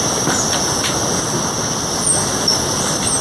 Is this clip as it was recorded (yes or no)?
yes